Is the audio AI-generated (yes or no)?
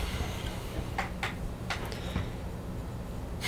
no